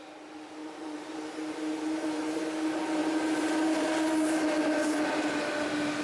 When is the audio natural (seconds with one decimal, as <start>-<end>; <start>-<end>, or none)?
0.0-0.6; 2.4-6.0